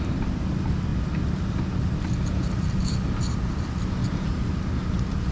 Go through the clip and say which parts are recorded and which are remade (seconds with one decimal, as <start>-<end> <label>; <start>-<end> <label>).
0.0-5.3 recorded